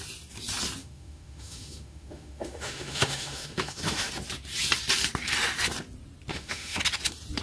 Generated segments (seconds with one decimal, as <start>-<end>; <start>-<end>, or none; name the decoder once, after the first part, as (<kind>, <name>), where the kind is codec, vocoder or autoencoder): 0.8-4.1 (autoencoder, DAC-VAE); 6.3-6.8